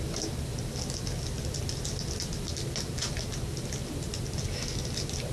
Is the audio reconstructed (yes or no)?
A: no